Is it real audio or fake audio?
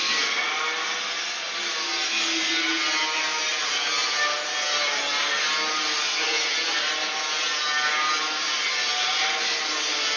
real